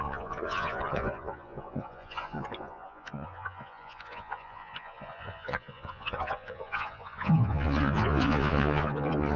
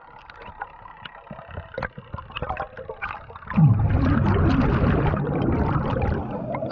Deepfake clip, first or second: first